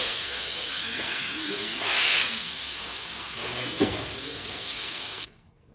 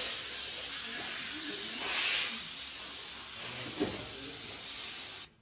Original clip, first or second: second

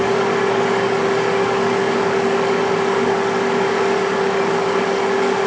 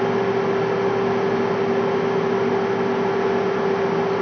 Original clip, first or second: second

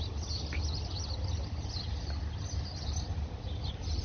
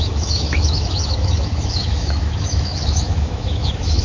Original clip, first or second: first